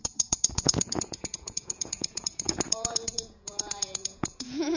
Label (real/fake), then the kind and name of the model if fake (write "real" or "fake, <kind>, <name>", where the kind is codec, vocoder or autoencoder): fake, vocoder, Vocos